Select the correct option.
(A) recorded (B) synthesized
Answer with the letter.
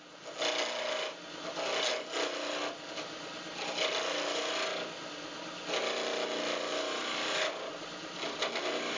A